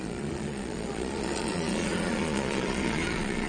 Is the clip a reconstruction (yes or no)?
yes